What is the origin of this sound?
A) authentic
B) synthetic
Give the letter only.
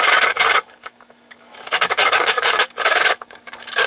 B